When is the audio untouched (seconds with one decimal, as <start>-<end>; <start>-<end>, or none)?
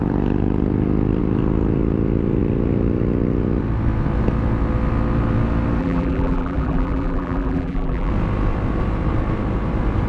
0.0-5.8; 8.1-10.1